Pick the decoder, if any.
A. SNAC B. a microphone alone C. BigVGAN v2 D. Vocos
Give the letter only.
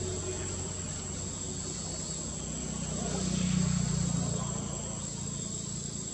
B